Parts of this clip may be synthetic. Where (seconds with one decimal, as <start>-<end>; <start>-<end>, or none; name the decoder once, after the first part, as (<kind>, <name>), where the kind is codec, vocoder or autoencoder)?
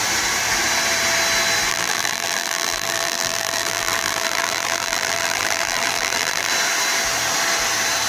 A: 1.7-6.5 (vocoder, BigVGAN v2)